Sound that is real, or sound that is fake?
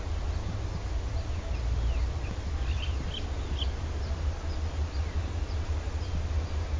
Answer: real